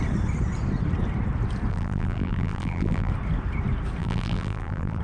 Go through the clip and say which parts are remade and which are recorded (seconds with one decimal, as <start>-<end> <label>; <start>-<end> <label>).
0.0-1.7 recorded; 1.7-3.1 remade; 3.1-4.0 recorded; 4.0-5.0 remade